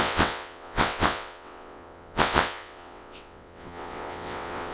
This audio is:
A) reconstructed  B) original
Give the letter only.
A